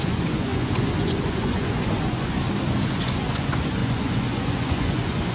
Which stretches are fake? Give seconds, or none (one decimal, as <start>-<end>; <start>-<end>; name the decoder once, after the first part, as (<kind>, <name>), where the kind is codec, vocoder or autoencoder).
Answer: 0.0-2.4 (vocoder, Vocos); 2.9-5.3